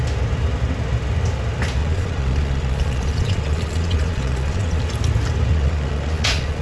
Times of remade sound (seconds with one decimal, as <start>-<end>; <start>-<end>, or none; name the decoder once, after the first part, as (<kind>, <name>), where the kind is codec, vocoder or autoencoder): 1.8-4.8 (vocoder, Vocos); 5.5-6.6